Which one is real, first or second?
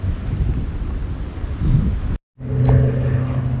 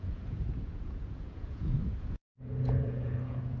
first